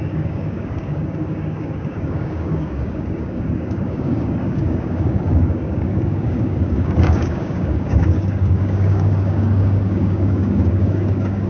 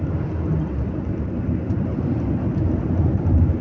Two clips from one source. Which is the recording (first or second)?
second